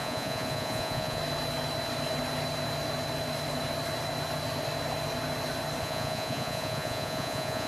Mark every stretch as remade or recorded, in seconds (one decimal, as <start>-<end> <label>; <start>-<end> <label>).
0.0-1.2 remade; 1.2-5.8 recorded; 5.8-7.7 remade